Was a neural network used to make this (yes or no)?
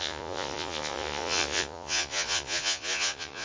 yes